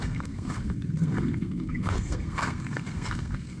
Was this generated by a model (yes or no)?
yes